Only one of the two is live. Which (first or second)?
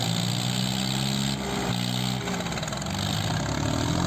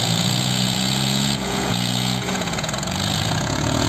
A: first